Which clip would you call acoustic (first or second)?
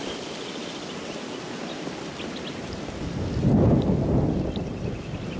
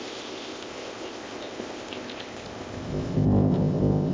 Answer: first